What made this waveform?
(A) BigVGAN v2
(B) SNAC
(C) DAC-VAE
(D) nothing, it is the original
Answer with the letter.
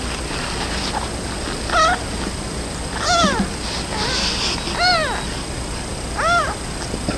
D